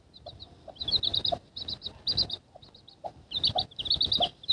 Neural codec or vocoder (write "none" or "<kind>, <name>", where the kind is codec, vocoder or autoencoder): none